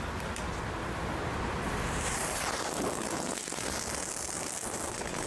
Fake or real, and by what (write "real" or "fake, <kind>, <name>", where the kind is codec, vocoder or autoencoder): real